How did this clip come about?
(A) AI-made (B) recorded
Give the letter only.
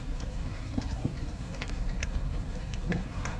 A